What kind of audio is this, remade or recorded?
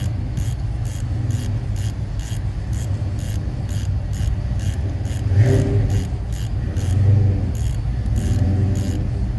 recorded